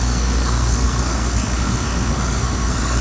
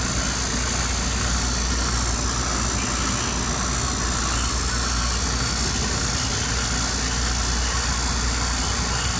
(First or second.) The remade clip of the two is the first